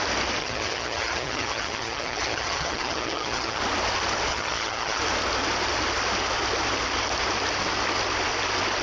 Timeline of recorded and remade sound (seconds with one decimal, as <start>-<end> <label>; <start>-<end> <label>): 0.0-0.4 recorded; 0.4-3.6 remade; 3.6-4.3 recorded; 4.3-5.0 remade; 5.0-8.8 recorded